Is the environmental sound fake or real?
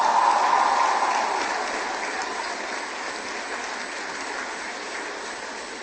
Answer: real